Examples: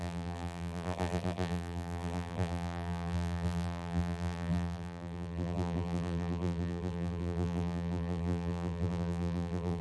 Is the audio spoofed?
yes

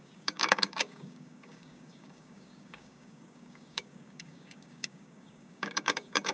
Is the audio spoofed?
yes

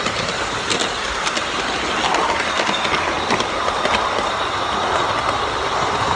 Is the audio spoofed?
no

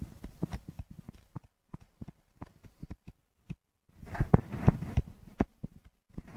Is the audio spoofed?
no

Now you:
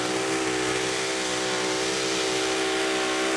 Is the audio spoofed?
no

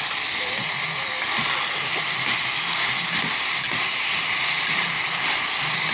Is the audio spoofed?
no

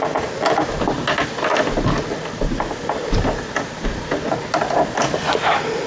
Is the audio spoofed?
no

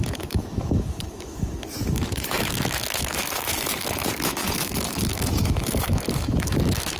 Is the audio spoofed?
yes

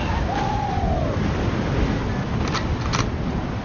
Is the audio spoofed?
no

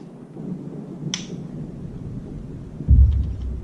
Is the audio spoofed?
no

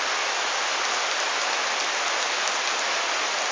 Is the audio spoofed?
no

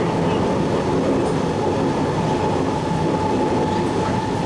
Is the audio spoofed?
no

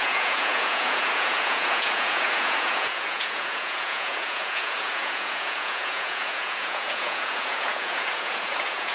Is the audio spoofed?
yes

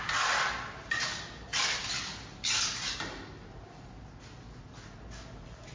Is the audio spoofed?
no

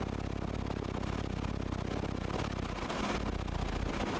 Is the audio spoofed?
no